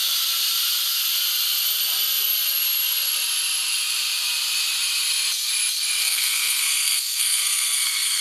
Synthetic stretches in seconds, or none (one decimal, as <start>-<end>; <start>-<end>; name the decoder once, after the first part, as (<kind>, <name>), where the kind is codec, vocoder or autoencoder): 6.0-8.2 (codec, SNAC)